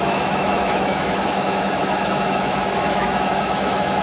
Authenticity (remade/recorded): remade